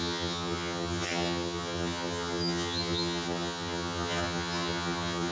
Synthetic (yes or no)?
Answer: yes